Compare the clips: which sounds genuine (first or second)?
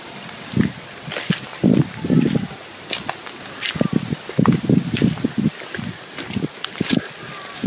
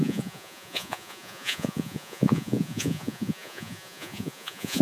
first